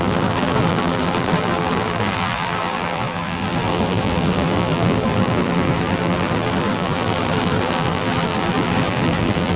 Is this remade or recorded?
remade